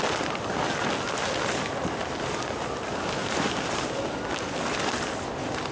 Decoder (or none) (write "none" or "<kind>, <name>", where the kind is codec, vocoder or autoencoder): none